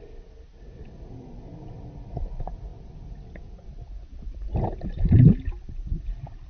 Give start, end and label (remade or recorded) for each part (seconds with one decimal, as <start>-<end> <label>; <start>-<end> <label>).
0.0-6.5 recorded